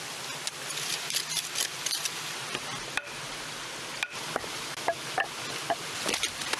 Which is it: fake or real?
real